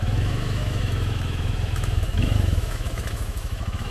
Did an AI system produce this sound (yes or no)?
yes